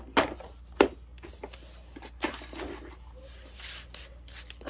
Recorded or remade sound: recorded